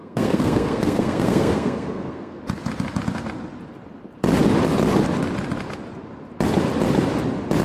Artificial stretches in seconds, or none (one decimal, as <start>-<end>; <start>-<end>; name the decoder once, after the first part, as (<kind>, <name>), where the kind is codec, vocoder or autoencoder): 0.0-2.4 (codec, SNAC)